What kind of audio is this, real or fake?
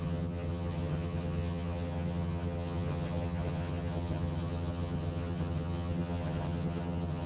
fake